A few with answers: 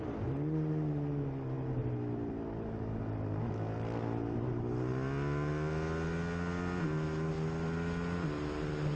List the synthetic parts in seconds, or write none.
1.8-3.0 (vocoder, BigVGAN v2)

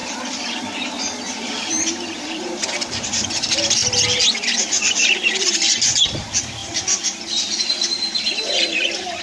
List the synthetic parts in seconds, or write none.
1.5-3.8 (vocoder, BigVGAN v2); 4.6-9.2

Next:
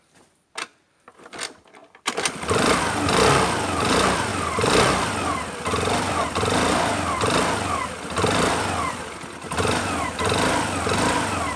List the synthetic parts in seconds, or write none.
1.8-2.8 (vocoder, BigVGAN v2); 4.3-5.1

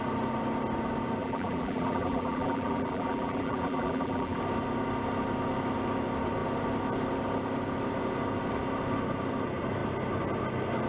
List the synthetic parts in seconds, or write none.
1.2-4.4 (vocoder, BigVGAN v2)

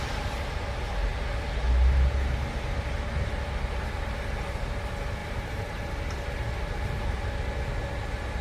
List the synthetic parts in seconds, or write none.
5.2-5.9 (vocoder, BigVGAN v2)

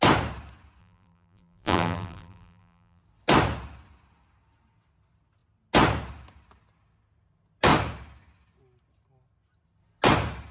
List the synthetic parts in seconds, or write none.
0.8-3.0 (vocoder, BigVGAN v2)